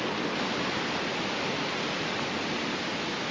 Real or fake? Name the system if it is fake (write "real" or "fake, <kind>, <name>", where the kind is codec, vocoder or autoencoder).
real